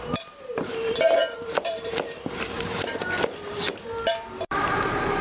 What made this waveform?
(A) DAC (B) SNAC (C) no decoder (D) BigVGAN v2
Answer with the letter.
D